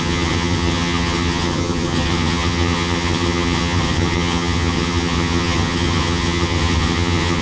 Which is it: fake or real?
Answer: fake